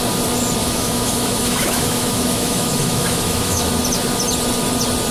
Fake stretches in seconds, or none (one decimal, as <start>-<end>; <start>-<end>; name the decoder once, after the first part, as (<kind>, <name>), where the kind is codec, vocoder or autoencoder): 0.6-3.7 (autoencoder, DAC-VAE)